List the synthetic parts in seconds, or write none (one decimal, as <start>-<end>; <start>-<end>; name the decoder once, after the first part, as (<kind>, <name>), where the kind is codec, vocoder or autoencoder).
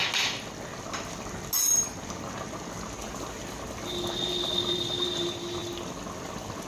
none